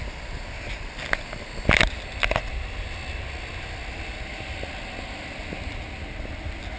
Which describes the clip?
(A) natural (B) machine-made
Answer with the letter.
A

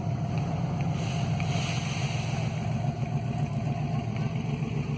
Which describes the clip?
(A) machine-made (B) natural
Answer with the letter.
B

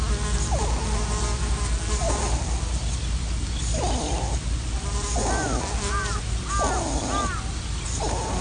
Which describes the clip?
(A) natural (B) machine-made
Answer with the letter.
A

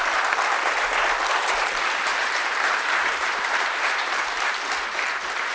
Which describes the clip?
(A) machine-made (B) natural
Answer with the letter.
A